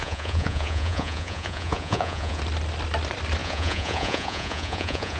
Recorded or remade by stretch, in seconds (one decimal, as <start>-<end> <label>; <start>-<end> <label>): 0.0-2.4 remade; 2.4-3.4 recorded; 3.4-5.2 remade